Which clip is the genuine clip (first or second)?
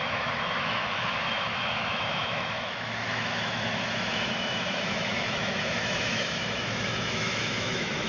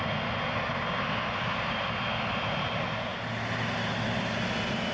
second